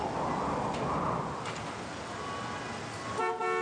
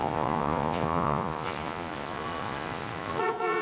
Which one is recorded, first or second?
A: first